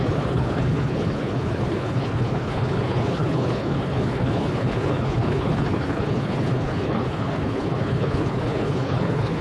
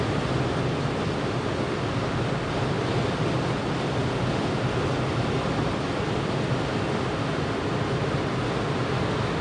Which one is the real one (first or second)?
second